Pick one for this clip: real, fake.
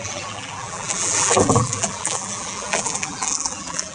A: fake